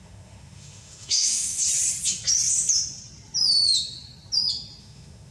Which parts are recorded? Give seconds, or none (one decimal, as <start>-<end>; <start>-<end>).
1.6-4.8